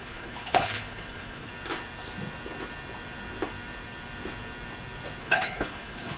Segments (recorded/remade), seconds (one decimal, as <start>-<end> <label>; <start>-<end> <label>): 0.0-1.5 remade; 1.5-5.2 recorded; 5.2-6.2 remade